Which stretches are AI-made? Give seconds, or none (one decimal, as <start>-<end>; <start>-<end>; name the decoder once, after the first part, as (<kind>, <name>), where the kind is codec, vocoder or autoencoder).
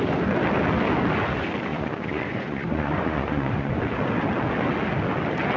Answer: 1.7-3.7 (vocoder, Vocos)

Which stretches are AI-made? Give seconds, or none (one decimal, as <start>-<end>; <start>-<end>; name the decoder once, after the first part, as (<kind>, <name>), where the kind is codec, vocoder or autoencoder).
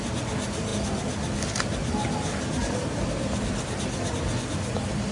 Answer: none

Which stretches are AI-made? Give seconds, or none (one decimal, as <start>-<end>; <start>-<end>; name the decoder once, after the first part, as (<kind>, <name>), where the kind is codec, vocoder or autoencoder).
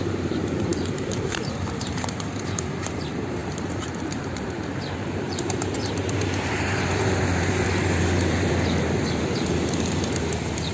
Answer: 0.0-10.7 (vocoder, BigVGAN v2)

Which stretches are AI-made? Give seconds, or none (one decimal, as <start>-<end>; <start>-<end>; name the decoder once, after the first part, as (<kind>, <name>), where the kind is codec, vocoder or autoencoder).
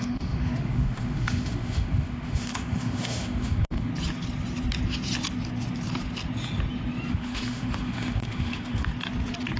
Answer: 0.0-3.9 (autoencoder, DAC-VAE); 7.1-8.9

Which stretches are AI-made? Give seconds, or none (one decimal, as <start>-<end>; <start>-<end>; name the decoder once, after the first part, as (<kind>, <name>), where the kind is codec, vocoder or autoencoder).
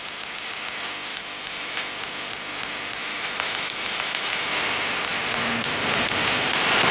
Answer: 1.1-1.9 (autoencoder, DAC-VAE); 3.0-4.5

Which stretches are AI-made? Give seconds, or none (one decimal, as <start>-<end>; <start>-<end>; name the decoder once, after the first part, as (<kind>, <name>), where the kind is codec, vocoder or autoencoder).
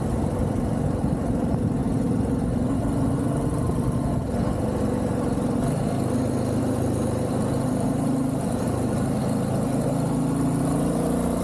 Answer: 0.0-1.8 (vocoder, BigVGAN v2); 6.6-9.2; 10.6-11.4